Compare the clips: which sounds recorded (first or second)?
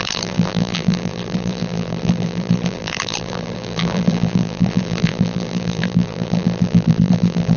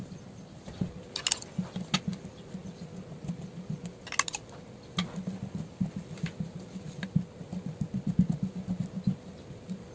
second